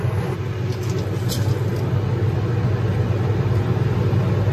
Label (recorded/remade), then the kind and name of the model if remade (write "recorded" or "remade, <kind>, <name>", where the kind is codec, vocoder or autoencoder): recorded